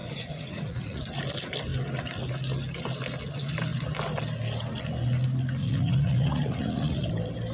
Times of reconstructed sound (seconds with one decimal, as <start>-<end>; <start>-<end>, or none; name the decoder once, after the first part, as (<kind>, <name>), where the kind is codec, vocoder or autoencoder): 0.0-1.0 (vocoder, Vocos); 5.6-7.1